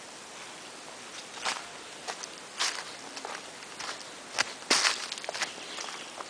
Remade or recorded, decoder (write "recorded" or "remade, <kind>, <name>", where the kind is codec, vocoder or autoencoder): recorded